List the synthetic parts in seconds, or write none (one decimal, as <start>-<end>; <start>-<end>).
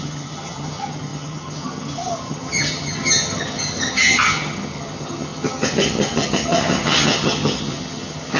0.0-8.4